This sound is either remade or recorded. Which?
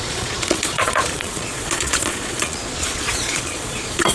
remade